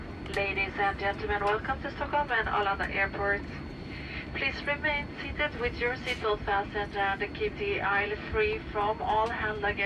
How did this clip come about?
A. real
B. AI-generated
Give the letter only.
A